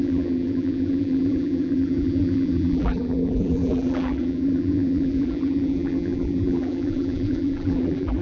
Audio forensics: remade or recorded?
remade